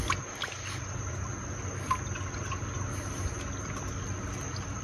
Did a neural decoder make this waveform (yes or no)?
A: no